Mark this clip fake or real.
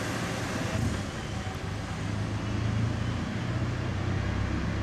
real